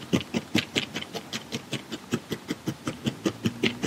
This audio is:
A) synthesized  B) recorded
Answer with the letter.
A